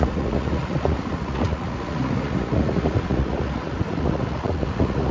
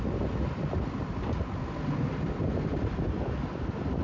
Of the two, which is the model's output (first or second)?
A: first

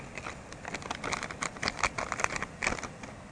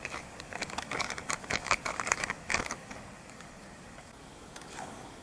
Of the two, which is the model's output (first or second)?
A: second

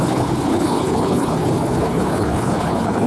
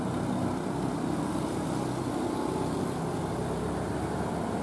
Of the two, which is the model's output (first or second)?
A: first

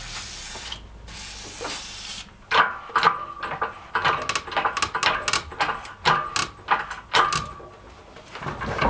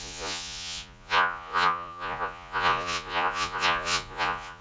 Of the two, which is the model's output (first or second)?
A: second